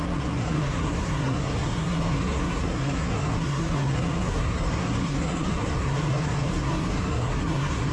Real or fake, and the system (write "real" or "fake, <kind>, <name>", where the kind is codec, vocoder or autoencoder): fake, codec, SNAC